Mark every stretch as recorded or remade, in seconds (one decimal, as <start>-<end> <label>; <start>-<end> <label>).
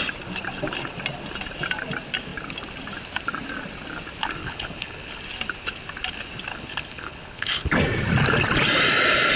0.0-4.4 recorded; 4.4-5.2 remade; 5.2-6.5 recorded; 6.5-7.7 remade; 7.7-9.4 recorded